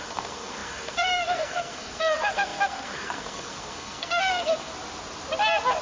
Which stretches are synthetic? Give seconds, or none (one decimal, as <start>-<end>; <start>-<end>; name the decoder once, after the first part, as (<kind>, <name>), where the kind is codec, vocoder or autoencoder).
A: 0.0-4.7 (codec, SNAC)